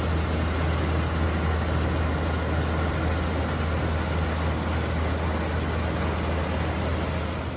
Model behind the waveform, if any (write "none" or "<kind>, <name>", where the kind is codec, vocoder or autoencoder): none